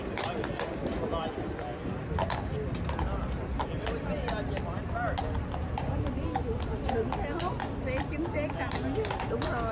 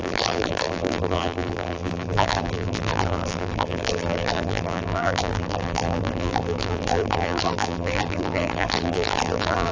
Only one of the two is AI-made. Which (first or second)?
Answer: second